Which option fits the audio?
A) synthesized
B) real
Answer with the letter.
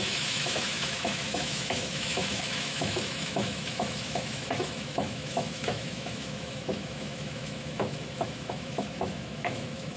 A